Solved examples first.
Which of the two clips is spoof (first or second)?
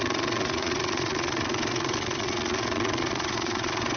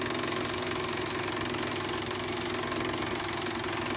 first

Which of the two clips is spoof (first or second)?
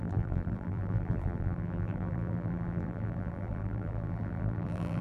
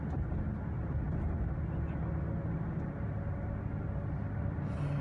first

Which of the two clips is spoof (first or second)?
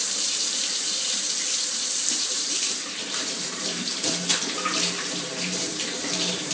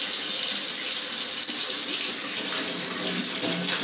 first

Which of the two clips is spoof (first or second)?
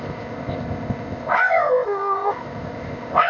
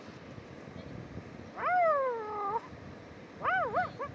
first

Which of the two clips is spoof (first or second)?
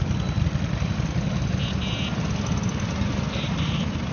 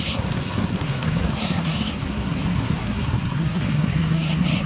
second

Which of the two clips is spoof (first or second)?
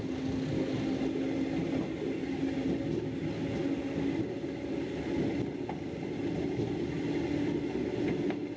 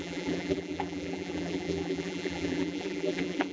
second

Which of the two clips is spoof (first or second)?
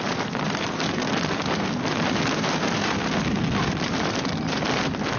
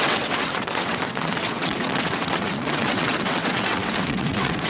second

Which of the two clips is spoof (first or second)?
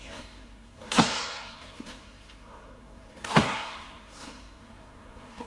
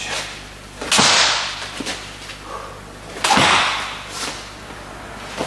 first